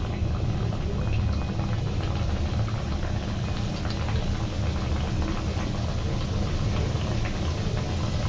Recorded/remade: recorded